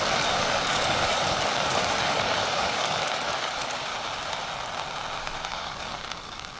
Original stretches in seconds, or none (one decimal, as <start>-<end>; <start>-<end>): 3.9-5.2